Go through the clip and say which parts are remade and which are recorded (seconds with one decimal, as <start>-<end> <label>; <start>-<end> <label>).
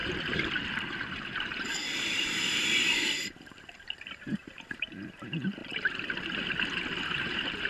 0.0-1.1 recorded; 1.1-5.6 remade; 5.6-7.0 recorded; 7.0-7.7 remade